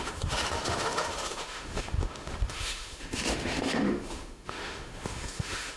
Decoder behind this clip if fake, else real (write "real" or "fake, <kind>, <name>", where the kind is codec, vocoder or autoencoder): fake, autoencoder, DAC-VAE